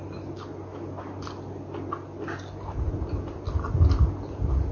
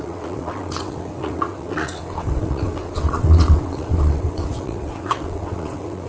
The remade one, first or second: second